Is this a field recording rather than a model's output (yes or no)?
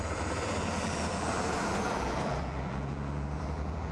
no